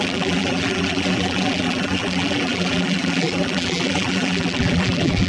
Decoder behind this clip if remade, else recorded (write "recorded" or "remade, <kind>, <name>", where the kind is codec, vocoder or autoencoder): remade, vocoder, BigVGAN v2